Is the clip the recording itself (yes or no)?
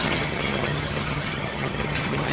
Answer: no